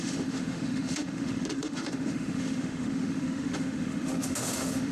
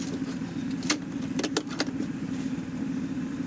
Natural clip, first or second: second